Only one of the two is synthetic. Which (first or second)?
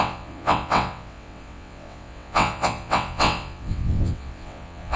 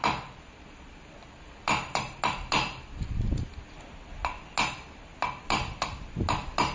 first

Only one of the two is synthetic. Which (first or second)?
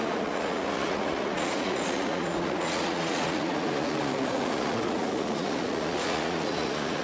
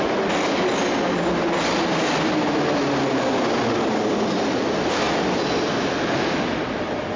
first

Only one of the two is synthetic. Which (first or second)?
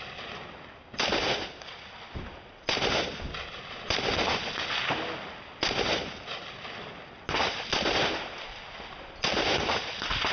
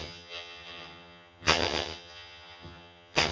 second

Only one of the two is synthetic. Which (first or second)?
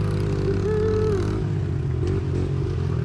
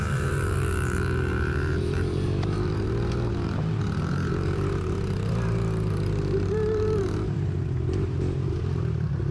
second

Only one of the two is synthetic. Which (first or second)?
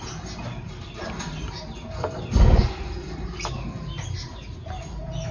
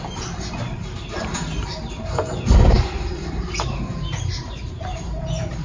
second